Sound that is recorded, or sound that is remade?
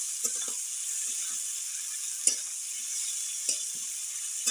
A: recorded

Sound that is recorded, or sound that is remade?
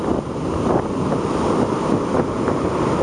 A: recorded